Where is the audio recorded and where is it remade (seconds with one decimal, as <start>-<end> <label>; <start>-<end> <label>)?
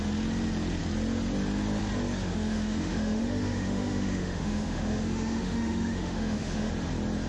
0.0-2.3 recorded; 2.3-6.7 remade; 6.7-7.3 recorded